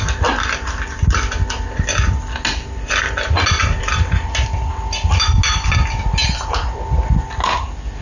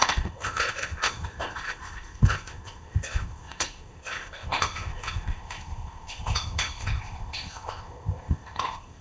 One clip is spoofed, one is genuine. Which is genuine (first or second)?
first